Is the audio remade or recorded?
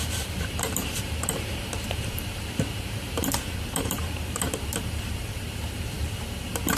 remade